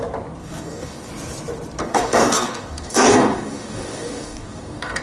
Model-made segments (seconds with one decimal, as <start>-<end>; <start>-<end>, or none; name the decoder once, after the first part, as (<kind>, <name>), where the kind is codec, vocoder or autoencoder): 0.4-1.1 (codec, DAC); 1.8-5.0